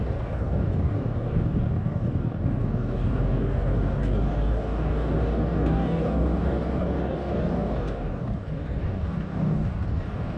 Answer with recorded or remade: remade